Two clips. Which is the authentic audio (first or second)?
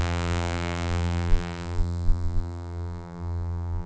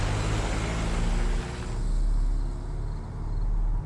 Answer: second